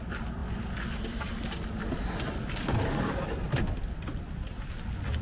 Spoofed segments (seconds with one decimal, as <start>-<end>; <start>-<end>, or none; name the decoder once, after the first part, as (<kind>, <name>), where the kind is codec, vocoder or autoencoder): none

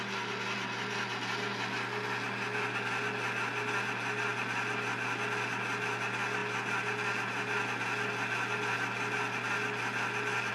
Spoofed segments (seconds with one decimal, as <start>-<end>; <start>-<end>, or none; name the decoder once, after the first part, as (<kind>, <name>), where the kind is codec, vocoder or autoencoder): none